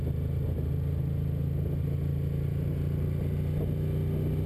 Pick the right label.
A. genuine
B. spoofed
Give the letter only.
A